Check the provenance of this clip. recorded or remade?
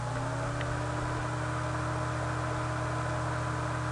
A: recorded